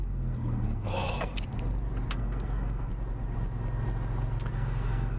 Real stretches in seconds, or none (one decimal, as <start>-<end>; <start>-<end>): 1.3-2.1; 2.9-4.5